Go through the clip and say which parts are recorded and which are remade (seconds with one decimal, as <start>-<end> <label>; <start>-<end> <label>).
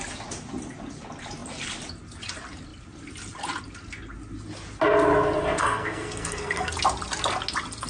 0.0-5.6 recorded; 5.6-6.7 remade; 6.7-7.9 recorded